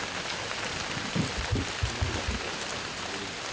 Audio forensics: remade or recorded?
recorded